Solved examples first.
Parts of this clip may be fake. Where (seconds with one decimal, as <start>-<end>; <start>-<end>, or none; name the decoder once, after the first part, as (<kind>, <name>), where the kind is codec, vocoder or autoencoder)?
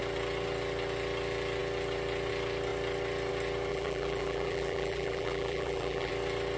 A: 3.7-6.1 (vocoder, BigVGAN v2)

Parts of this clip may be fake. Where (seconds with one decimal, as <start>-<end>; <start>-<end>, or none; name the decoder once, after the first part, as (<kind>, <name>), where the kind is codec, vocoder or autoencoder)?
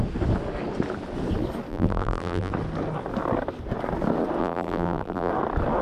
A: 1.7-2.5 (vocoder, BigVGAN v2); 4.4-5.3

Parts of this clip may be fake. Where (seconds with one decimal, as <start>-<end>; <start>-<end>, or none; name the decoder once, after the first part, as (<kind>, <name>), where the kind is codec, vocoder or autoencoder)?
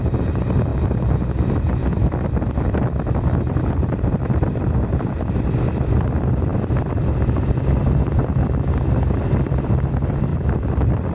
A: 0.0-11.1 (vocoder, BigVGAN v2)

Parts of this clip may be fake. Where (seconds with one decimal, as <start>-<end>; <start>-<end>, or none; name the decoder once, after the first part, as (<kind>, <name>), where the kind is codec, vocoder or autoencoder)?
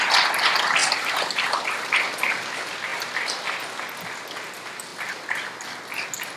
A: 0.8-1.9 (vocoder, BigVGAN v2)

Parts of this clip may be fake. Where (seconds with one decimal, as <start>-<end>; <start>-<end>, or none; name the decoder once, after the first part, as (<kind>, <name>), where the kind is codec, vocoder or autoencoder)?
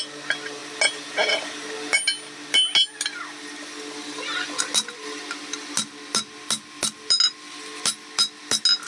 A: none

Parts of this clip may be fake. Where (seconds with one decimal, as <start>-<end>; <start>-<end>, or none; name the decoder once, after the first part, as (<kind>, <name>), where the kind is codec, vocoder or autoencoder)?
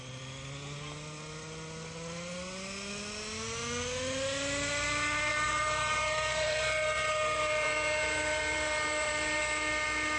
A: 5.3-9.4 (vocoder, BigVGAN v2)